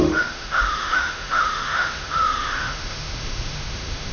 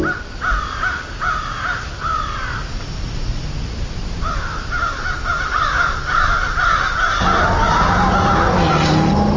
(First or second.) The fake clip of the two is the first